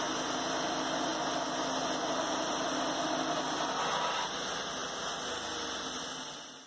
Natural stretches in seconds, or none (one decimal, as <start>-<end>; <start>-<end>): 0.0-6.7